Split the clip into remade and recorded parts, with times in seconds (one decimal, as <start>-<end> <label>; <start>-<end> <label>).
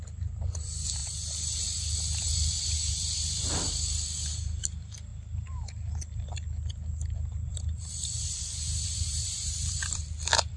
0.0-1.0 remade; 1.0-2.9 recorded; 2.9-5.1 remade; 5.1-7.5 recorded; 7.5-10.6 remade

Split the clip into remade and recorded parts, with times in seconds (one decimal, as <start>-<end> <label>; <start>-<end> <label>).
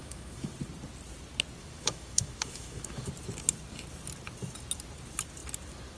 0.0-0.5 remade; 0.5-1.6 recorded; 1.6-3.1 remade; 3.1-6.0 recorded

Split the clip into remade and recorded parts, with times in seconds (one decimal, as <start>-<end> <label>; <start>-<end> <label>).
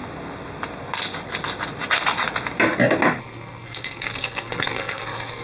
0.0-3.2 recorded; 3.2-5.4 remade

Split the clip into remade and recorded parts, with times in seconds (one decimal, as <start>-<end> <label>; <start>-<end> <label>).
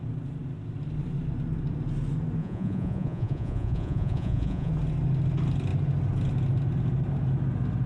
0.0-2.4 recorded; 2.4-4.7 remade; 4.7-7.9 recorded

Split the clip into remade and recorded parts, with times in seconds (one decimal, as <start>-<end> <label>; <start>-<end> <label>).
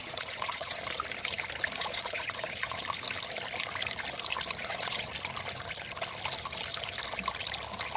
0.0-0.8 remade; 0.8-1.8 recorded; 1.8-2.8 remade; 2.8-4.6 recorded; 4.6-5.1 remade; 5.1-8.0 recorded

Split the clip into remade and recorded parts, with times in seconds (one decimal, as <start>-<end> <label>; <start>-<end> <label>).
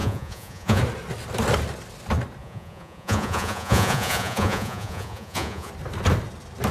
0.0-0.8 remade; 0.8-2.4 recorded; 2.4-5.7 remade; 5.7-6.7 recorded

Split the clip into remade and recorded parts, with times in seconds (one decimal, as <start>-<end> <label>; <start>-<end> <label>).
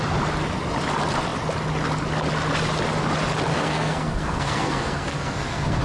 0.0-3.5 recorded; 3.5-5.8 remade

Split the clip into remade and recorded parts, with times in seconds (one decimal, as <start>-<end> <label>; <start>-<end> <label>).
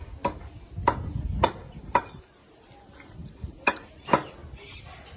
0.0-1.6 recorded; 1.6-2.5 remade; 2.5-3.2 recorded; 3.2-3.9 remade; 3.9-4.4 recorded; 4.4-5.2 remade